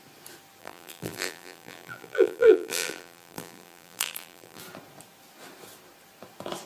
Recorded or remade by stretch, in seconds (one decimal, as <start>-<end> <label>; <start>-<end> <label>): 0.0-0.6 recorded; 0.6-4.6 remade; 4.6-6.7 recorded